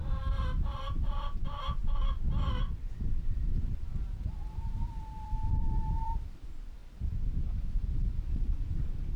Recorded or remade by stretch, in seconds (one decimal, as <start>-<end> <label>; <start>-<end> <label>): 0.0-1.8 remade; 1.8-2.8 recorded; 2.8-9.2 remade